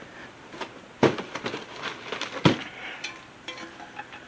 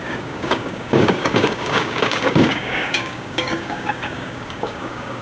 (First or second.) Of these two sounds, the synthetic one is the second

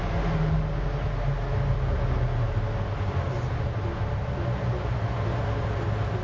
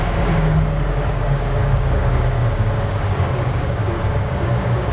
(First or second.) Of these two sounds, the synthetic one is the second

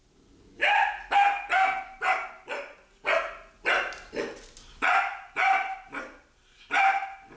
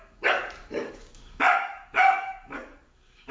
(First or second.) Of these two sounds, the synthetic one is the second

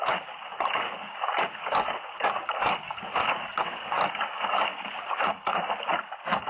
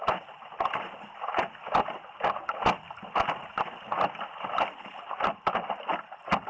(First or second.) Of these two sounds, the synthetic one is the first